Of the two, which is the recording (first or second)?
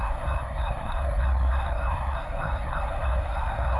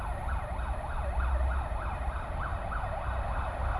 second